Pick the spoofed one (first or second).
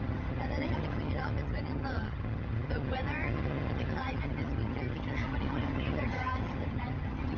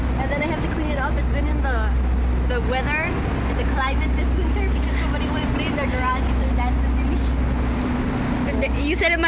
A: first